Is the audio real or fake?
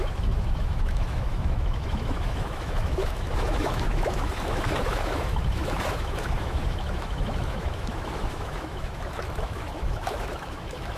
fake